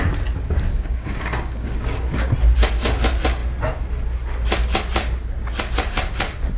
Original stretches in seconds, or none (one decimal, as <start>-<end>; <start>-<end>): 0.0-0.7; 2.3-6.6